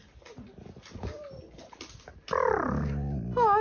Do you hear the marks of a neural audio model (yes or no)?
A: no